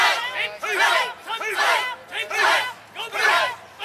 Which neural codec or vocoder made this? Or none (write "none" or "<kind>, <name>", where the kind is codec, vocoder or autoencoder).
none